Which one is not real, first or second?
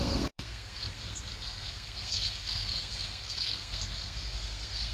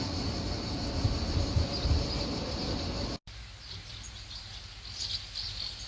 first